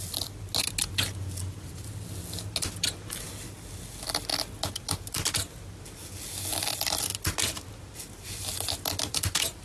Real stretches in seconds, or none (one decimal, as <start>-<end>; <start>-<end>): 0.0-9.6